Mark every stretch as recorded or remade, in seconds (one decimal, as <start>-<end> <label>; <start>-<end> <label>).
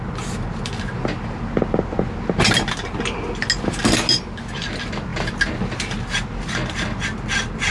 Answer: 0.0-7.7 recorded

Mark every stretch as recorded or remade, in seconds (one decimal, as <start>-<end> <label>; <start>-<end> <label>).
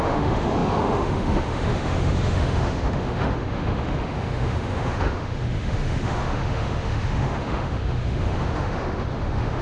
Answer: 0.0-9.6 remade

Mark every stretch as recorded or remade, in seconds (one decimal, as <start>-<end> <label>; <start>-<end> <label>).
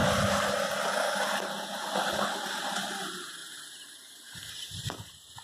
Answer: 0.0-5.4 recorded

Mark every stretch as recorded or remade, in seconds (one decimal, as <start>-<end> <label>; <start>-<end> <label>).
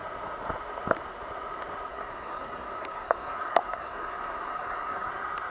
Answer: 0.0-1.9 recorded; 1.9-5.1 remade; 5.1-5.5 recorded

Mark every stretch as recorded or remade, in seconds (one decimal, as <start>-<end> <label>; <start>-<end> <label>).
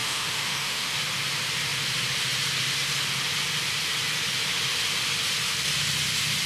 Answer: 0.0-0.9 remade; 0.9-6.5 recorded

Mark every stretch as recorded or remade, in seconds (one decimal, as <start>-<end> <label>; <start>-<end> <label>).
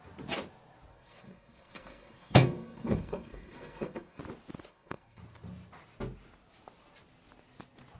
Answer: 0.0-0.9 recorded; 0.9-4.2 remade; 4.2-4.7 recorded; 4.7-5.2 remade; 5.2-8.0 recorded